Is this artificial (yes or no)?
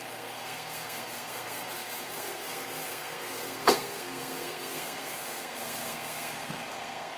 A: yes